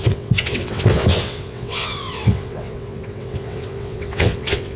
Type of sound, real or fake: fake